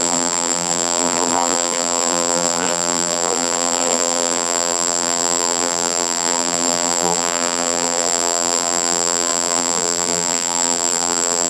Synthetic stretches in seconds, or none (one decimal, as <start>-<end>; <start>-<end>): 0.0-11.5